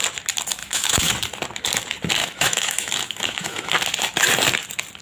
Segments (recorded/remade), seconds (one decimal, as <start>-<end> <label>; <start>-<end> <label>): 0.0-0.6 recorded; 0.6-1.1 remade; 1.1-2.2 recorded; 2.2-3.7 remade; 3.7-5.0 recorded